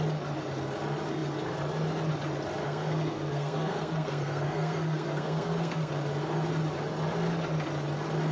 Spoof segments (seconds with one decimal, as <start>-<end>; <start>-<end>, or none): 2.6-5.9